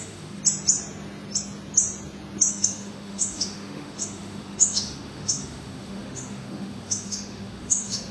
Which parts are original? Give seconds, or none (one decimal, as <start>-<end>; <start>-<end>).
0.4-2.5